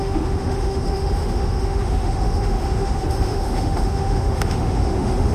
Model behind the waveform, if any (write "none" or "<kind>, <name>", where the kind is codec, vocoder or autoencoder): autoencoder, DAC-VAE